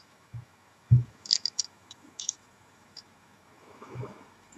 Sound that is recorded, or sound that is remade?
remade